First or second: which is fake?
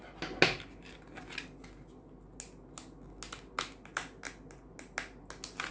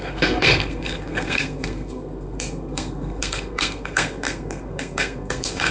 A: second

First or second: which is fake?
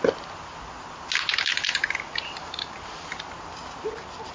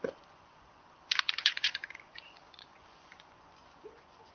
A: second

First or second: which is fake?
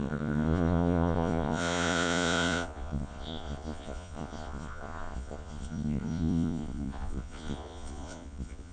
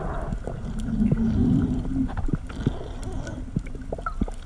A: first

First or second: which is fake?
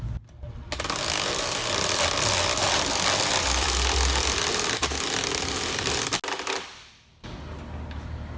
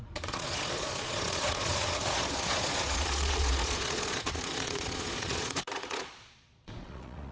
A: second